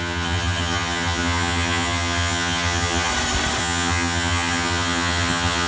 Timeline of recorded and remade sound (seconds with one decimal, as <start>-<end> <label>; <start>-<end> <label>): 0.0-3.1 remade; 3.1-3.6 recorded; 3.6-5.7 remade